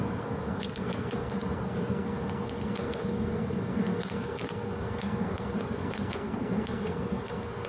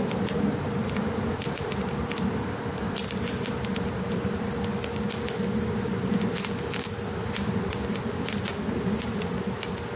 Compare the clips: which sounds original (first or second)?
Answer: second